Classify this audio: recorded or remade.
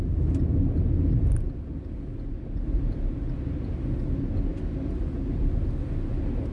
recorded